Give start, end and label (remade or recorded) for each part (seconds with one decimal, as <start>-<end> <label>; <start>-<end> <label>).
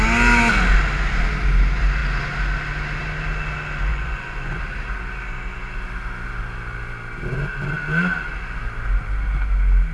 0.0-3.9 recorded; 3.9-4.6 remade; 4.6-9.9 recorded